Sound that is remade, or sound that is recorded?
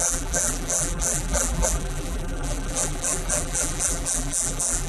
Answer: remade